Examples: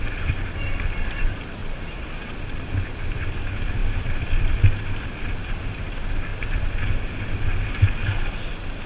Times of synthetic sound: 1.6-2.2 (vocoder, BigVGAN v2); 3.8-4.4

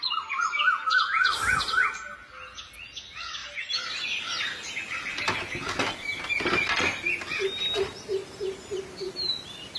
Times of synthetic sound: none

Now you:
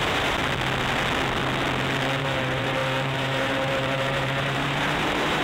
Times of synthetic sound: 0.0-0.4 (vocoder, BigVGAN v2); 2.2-5.4

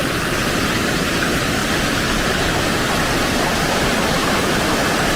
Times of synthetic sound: 1.6-2.8 (vocoder, BigVGAN v2); 4.2-5.2

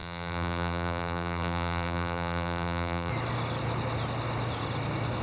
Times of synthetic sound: 0.0-3.1 (vocoder, BigVGAN v2)